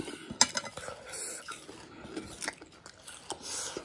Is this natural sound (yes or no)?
yes